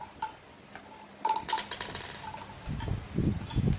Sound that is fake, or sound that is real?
real